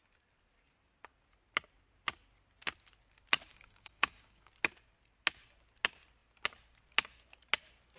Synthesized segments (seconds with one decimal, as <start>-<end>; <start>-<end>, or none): 3.5-4.5